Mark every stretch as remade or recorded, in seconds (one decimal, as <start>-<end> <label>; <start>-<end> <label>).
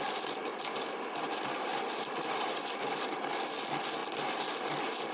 0.0-5.1 recorded